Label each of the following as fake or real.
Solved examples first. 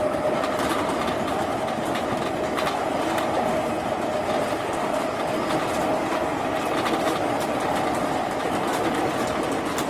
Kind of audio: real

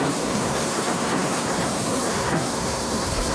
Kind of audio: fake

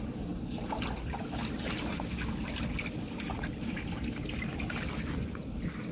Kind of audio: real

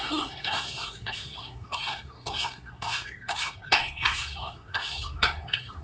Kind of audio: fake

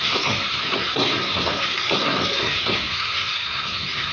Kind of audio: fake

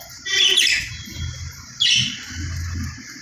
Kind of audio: real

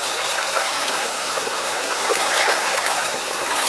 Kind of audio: fake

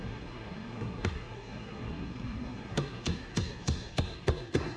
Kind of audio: fake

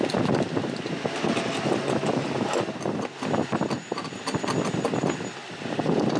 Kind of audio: real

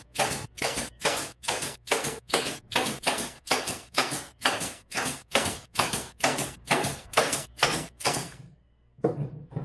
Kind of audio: fake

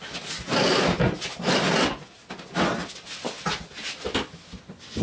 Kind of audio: real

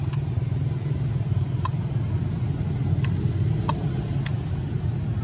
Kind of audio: real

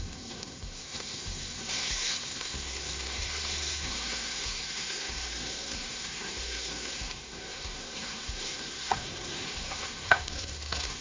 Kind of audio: fake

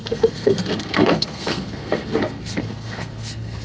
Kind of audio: fake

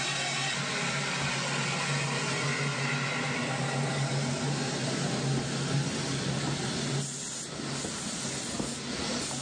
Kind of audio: real